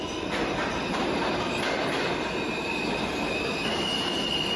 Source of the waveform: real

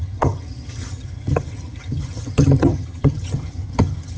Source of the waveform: fake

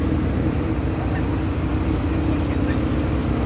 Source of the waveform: real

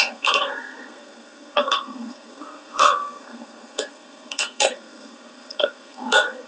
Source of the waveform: fake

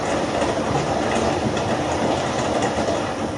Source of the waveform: real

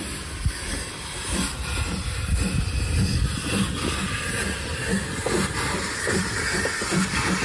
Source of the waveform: real